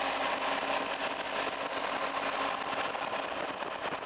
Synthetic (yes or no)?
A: no